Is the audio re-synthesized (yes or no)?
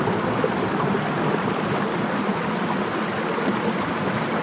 no